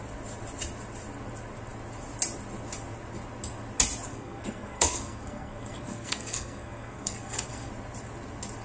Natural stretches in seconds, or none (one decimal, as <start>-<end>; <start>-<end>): 0.0-4.1; 7.7-8.6